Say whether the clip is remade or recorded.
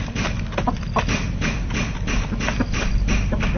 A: remade